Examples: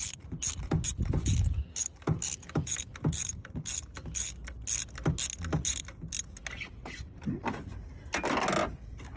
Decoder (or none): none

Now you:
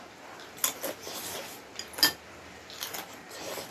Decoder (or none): none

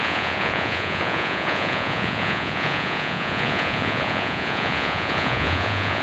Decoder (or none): vocoder, Vocos